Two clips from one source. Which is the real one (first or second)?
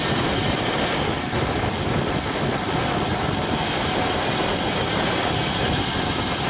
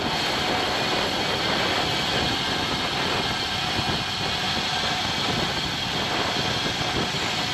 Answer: second